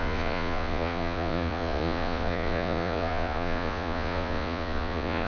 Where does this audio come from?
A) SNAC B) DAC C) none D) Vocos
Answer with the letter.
D